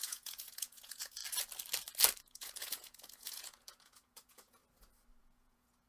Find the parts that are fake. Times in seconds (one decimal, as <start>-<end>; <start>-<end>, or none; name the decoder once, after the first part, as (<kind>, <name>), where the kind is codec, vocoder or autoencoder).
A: 0.0-1.2 (vocoder, Vocos); 2.2-4.6; 5.2-5.9